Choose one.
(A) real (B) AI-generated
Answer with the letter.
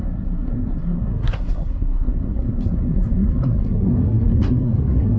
B